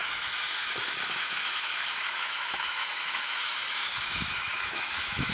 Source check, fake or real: fake